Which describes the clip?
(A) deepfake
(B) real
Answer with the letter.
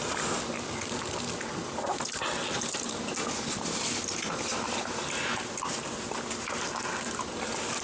B